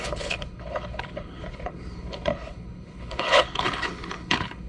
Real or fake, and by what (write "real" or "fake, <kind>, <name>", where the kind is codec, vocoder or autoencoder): fake, codec, HILCodec